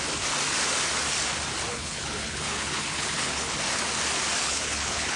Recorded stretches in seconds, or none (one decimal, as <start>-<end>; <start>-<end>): 0.0-1.7; 3.5-4.4